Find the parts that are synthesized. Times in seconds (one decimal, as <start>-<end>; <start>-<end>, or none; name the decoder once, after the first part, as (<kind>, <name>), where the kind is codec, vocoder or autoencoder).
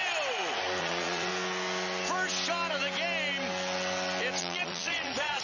0.8-1.3 (vocoder, Vocos); 4.4-5.4